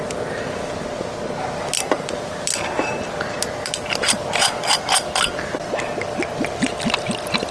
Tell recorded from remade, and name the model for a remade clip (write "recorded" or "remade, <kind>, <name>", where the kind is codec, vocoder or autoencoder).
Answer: recorded